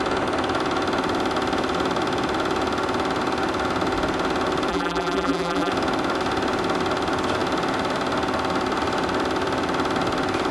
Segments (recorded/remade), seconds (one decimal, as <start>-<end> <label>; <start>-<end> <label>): 0.0-4.7 recorded; 4.7-5.7 remade; 5.7-10.5 recorded